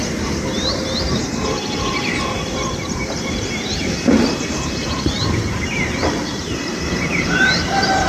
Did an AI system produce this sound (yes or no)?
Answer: yes